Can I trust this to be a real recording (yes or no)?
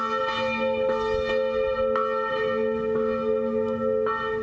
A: yes